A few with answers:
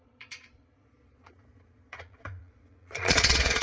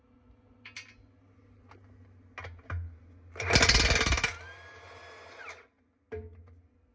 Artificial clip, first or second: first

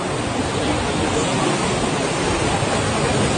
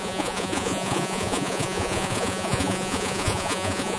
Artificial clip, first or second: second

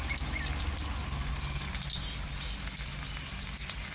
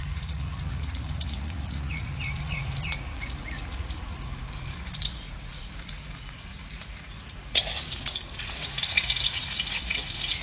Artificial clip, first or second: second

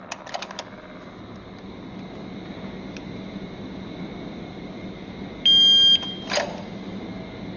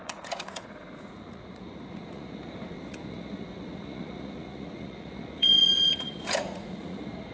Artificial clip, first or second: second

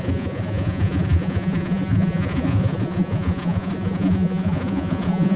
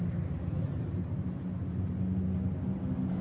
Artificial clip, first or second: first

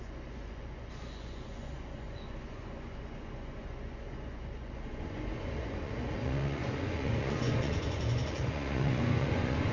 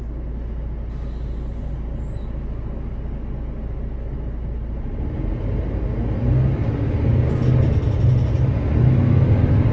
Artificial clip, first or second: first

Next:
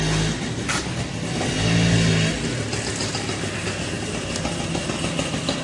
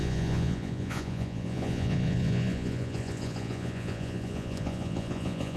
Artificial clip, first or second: second